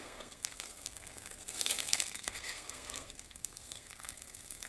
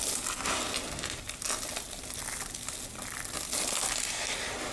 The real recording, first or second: second